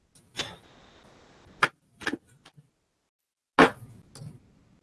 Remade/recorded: recorded